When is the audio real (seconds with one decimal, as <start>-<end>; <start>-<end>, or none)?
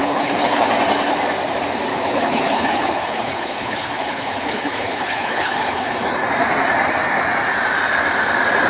0.7-1.9; 5.9-8.7